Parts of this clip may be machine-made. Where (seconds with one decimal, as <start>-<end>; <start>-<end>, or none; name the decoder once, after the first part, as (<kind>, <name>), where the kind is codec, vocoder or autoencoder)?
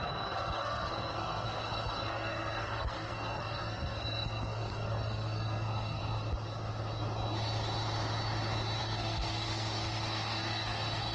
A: 0.0-6.0 (codec, SNAC); 8.8-11.1